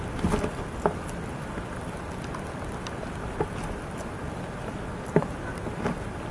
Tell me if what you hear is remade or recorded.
recorded